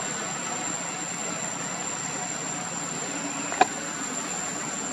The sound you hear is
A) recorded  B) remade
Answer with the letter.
A